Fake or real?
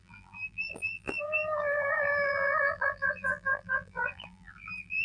fake